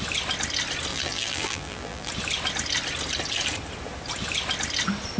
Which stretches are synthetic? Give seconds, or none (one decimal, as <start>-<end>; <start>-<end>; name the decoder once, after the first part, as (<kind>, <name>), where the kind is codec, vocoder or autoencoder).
0.9-2.1 (vocoder, BigVGAN v2)